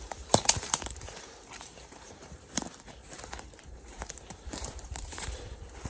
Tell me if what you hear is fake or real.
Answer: fake